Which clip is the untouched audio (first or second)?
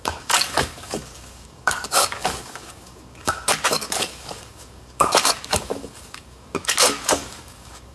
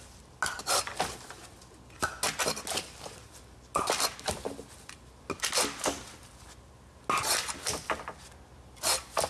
second